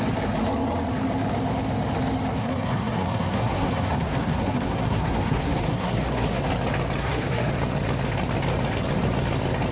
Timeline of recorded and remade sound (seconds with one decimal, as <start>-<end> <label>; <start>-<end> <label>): 0.0-2.4 recorded; 2.4-6.4 remade; 6.4-7.0 recorded; 7.0-7.5 remade; 7.5-9.7 recorded